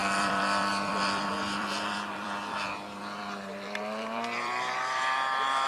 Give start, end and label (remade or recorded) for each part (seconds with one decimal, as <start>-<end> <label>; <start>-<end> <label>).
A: 0.0-5.7 remade

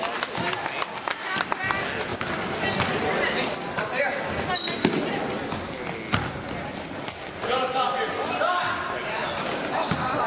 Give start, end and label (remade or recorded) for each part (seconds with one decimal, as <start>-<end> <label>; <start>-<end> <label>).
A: 0.0-10.3 recorded